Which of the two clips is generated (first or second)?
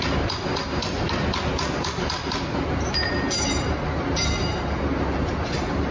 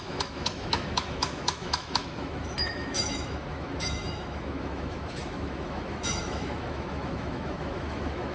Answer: second